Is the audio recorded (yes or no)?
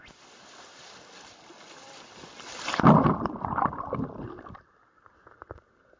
yes